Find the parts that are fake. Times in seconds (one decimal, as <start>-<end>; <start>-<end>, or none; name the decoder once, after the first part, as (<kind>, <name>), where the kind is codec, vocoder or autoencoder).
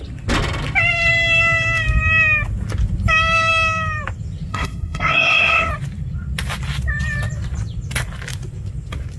4.5-5.7 (codec, SNAC)